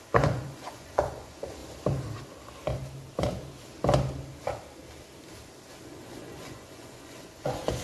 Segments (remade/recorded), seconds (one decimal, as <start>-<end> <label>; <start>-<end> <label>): 0.0-1.6 remade; 1.6-5.8 recorded; 5.8-7.8 remade